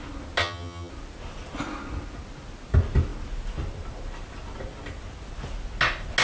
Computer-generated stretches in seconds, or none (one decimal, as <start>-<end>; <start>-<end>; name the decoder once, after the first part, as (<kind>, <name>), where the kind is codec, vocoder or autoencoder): 0.4-0.9 (vocoder, HiFi-GAN)